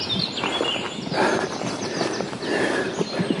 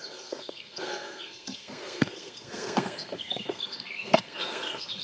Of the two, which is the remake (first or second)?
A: second